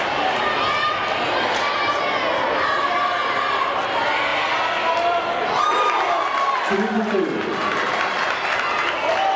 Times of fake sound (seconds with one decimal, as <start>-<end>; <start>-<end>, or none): none

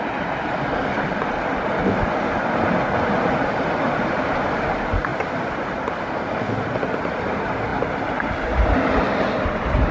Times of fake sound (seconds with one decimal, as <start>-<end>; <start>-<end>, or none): none

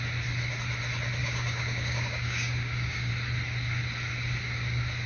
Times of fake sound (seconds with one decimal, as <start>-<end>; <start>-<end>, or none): 1.2-3.1

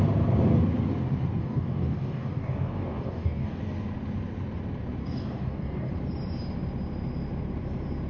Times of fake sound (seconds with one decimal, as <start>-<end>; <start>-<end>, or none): 1.4-3.6; 5.0-5.9

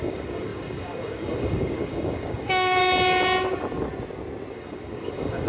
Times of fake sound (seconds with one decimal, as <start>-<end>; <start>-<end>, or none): 0.0-2.8; 4.5-5.5

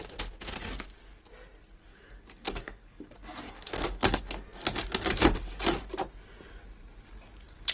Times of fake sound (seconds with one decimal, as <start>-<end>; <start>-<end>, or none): 1.9-4.2